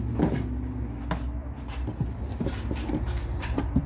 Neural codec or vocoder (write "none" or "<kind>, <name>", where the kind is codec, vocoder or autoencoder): none